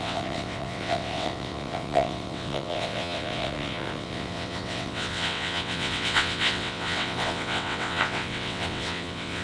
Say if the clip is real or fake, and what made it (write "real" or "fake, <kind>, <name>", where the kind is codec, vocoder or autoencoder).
fake, vocoder, WaveNeXt